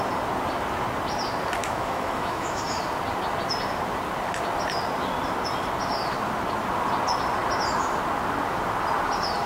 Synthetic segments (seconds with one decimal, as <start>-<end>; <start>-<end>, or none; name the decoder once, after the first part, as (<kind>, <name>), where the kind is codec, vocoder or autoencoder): 1.6-2.6 (autoencoder, DAC-VAE)